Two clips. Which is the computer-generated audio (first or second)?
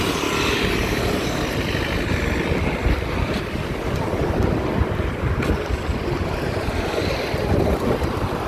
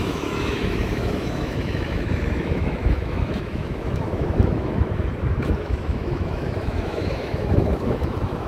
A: second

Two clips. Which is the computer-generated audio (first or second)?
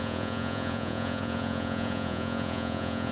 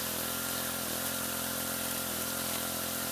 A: first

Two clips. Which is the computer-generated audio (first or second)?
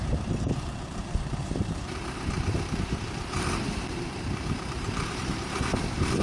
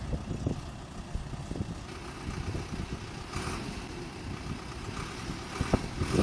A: first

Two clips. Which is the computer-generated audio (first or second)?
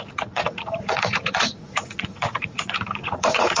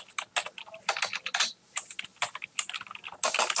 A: first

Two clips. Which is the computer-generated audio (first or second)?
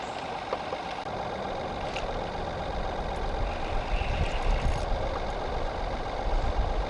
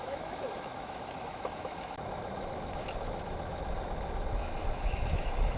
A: second